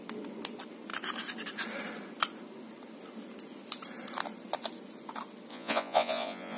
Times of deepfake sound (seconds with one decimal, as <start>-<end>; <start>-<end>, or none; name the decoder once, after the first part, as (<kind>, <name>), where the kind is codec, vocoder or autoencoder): 5.5-6.6 (vocoder, Vocos)